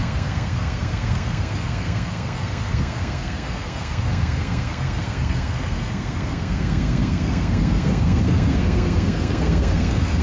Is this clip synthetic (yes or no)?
yes